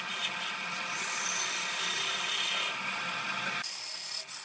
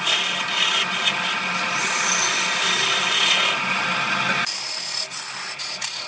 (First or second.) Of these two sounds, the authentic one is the second